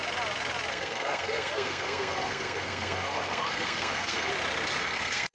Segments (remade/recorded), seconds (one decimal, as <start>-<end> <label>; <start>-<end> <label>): 0.0-0.7 recorded; 0.7-4.3 remade; 4.3-4.8 recorded; 4.8-5.3 remade